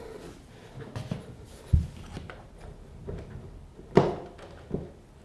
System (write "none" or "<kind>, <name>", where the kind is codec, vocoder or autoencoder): none